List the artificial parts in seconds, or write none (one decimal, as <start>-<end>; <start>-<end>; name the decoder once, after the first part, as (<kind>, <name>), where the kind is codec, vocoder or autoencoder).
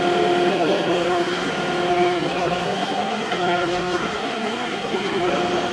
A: 0.5-1.5 (codec, SNAC); 1.9-5.3